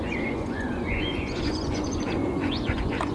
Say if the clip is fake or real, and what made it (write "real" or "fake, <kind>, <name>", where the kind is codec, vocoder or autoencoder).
fake, vocoder, Vocos